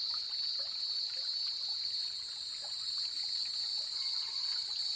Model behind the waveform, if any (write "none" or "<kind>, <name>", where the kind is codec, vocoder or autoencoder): none